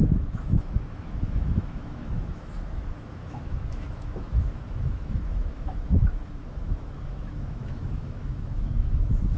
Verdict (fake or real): fake